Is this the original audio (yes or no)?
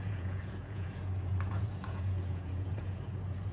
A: no